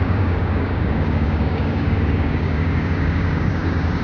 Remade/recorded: remade